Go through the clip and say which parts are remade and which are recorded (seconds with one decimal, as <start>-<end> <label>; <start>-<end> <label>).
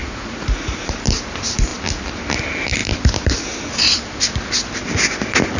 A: 0.0-0.9 remade; 0.9-5.6 recorded